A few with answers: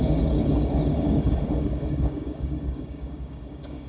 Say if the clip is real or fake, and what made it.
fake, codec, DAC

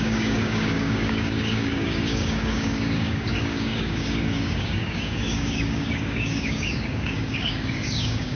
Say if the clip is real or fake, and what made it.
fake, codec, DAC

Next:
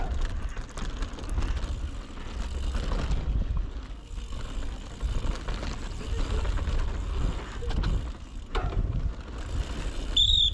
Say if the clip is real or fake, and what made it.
real